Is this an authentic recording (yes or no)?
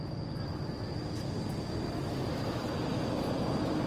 yes